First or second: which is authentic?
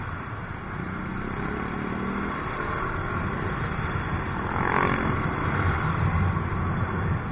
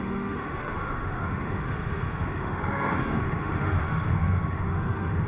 first